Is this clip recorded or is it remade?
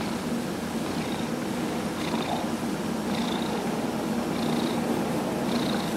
recorded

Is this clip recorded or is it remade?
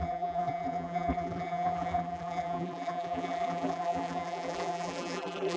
remade